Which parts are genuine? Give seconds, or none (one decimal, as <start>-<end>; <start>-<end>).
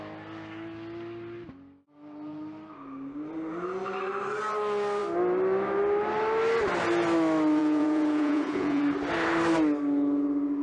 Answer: 0.0-7.6; 8.8-10.6